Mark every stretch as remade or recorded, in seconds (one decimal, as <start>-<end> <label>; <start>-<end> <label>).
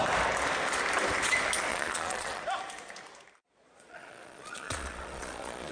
0.0-1.7 recorded; 1.7-2.4 remade; 2.4-3.4 recorded; 3.4-5.7 remade